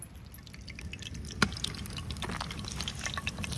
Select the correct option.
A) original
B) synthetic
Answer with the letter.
A